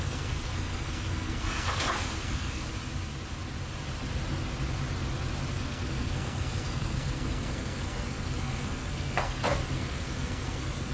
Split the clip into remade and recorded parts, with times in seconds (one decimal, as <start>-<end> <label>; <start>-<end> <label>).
0.0-2.7 remade; 2.7-5.5 recorded; 5.5-10.9 remade

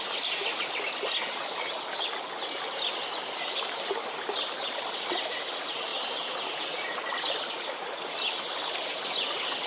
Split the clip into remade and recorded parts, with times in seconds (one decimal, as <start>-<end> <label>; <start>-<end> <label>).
0.0-9.7 recorded

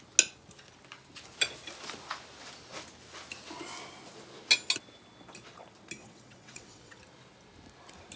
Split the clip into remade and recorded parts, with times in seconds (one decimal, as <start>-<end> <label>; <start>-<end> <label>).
0.0-6.0 recorded; 6.0-7.0 remade; 7.0-8.2 recorded

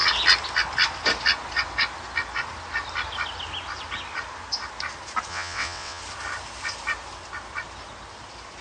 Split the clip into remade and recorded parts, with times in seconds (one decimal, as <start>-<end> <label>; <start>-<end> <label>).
0.0-5.3 recorded; 5.3-6.0 remade; 6.0-8.6 recorded

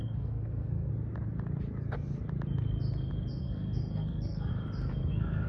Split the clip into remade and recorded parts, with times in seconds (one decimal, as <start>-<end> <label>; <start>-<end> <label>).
0.0-0.9 remade; 0.9-3.4 recorded; 3.4-4.5 remade; 4.5-5.1 recorded; 5.1-5.5 remade

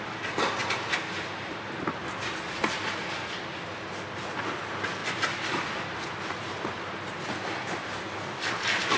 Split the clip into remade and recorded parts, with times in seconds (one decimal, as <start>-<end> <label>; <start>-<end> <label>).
0.0-9.0 recorded